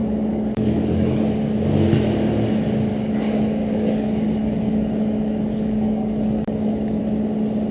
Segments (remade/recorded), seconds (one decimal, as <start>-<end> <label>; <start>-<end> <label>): 0.0-1.2 remade; 1.2-2.9 recorded; 2.9-7.0 remade; 7.0-7.7 recorded